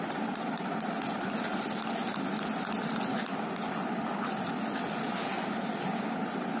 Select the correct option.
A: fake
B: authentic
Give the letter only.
B